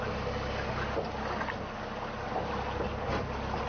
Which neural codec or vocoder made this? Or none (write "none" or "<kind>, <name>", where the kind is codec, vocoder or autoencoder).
none